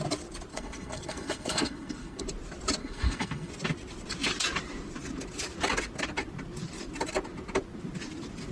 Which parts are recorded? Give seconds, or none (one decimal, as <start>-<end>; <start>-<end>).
0.0-0.5; 2.2-2.8; 3.5-8.5